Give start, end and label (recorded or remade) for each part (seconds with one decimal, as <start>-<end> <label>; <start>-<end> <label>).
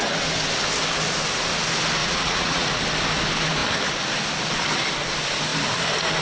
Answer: 0.0-2.0 recorded; 2.0-2.8 remade; 2.8-6.2 recorded